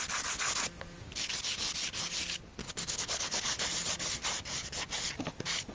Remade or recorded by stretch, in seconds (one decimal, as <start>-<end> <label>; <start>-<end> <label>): 0.0-2.6 recorded; 2.6-3.4 remade; 3.4-5.7 recorded